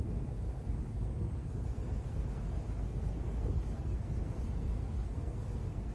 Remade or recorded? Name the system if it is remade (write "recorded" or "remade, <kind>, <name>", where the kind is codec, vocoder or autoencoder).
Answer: remade, codec, SNAC